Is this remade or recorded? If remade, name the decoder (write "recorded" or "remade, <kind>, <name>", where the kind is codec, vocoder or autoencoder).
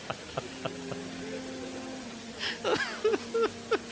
recorded